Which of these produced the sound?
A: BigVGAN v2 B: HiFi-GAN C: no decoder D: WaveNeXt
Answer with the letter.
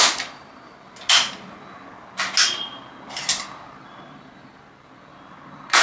C